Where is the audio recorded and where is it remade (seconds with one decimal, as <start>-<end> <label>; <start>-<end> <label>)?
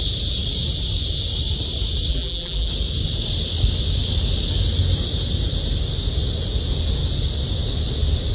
0.0-2.1 recorded; 2.1-2.7 remade; 2.7-8.3 recorded